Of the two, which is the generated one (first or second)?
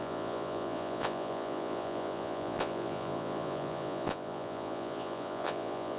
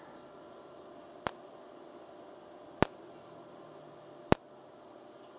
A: first